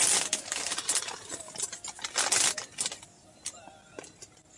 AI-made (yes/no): no